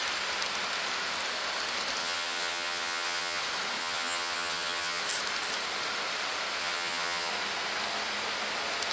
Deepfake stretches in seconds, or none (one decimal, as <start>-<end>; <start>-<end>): 2.0-3.4; 3.8-5.0; 6.6-7.3